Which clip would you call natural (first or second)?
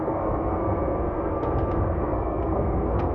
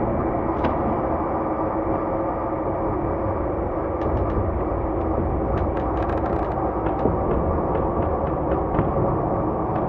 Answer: second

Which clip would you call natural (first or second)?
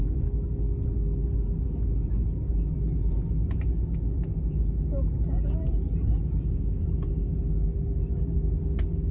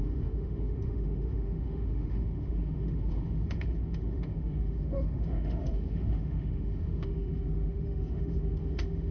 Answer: first